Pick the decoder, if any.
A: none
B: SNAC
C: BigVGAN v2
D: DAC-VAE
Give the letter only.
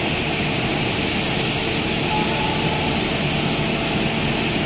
A